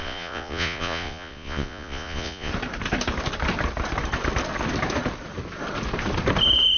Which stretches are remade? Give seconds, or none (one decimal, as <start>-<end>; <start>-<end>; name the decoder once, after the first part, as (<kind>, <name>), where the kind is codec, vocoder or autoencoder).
0.0-2.5 (vocoder, Vocos)